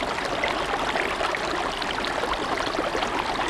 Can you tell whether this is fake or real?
real